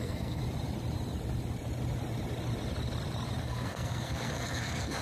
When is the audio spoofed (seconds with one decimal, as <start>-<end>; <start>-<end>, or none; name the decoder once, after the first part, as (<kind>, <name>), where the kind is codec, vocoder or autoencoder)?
0.0-0.4 (codec, SNAC); 3.4-5.0